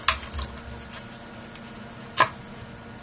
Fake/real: real